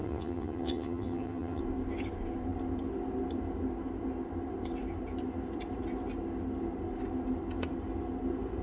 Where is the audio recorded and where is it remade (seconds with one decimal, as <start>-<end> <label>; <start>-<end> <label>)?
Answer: 0.0-1.6 remade; 1.6-8.6 recorded

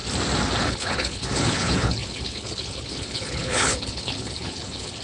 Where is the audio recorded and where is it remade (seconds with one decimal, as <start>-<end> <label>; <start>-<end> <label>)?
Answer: 0.0-0.6 recorded; 0.6-5.0 remade